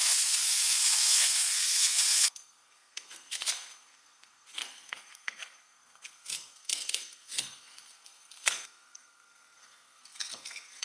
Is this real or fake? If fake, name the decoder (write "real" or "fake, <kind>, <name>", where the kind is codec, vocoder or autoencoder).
fake, codec, SNAC